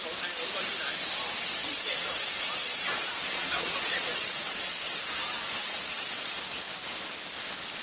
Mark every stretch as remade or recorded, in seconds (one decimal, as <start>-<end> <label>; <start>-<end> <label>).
0.0-1.6 recorded; 1.6-2.3 remade; 2.3-2.7 recorded; 2.7-5.1 remade; 5.1-5.6 recorded; 5.6-6.4 remade; 6.4-7.8 recorded